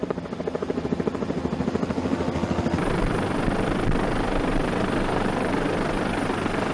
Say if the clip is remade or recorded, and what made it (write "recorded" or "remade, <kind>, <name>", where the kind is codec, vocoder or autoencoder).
recorded